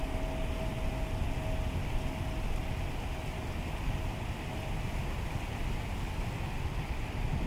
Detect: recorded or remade recorded